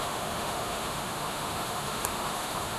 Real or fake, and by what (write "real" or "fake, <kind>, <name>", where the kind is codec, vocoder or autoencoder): fake, autoencoder, DAC-VAE